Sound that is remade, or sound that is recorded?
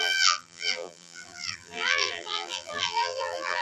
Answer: remade